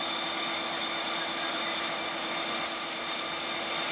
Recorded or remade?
recorded